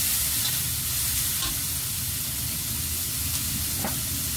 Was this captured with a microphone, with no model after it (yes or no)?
yes